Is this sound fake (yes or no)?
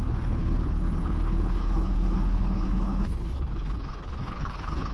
yes